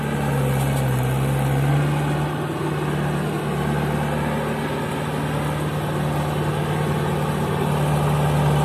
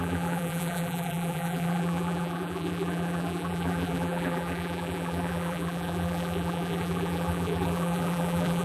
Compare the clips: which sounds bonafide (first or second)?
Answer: first